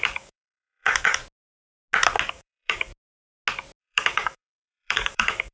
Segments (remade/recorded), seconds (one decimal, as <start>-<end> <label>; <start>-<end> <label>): 0.0-1.2 remade; 1.2-2.3 recorded; 2.3-2.9 remade; 2.9-3.8 recorded; 3.8-5.5 remade